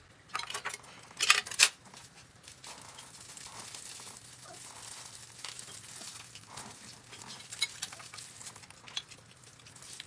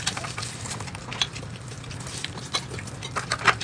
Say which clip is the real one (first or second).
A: first